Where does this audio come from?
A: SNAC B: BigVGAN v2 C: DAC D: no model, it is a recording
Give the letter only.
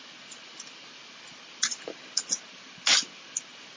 D